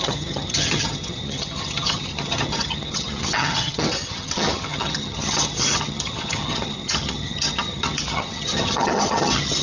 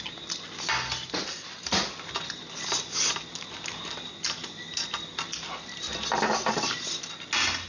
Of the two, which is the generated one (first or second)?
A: first